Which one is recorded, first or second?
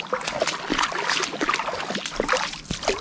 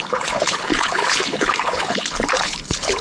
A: first